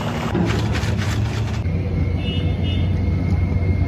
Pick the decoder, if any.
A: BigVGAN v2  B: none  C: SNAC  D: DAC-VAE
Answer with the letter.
B